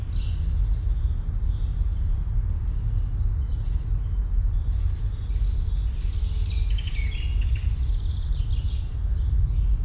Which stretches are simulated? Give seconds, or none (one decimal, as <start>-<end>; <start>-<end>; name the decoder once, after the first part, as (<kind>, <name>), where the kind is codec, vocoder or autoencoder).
none